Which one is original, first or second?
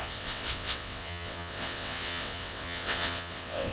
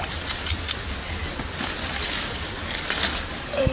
second